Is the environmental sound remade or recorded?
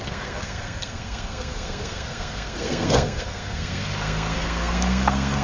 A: remade